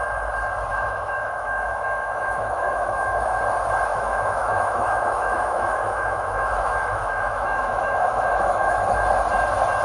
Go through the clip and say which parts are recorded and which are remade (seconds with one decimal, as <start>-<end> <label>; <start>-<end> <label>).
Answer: 0.0-0.7 recorded; 0.7-3.4 remade; 3.4-3.9 recorded; 3.9-8.8 remade; 8.8-9.8 recorded